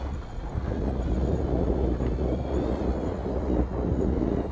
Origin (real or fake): fake